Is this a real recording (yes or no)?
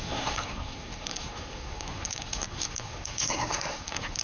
no